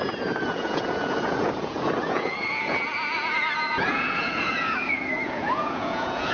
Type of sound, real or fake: fake